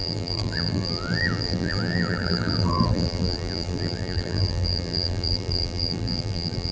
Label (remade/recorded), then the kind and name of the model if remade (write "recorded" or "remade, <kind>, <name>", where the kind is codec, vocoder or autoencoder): remade, vocoder, BigVGAN v2